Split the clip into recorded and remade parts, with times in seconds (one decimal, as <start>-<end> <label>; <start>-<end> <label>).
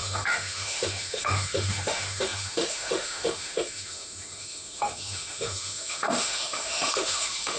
0.0-7.6 remade